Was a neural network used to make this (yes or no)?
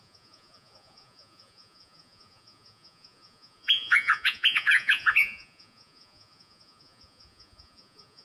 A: yes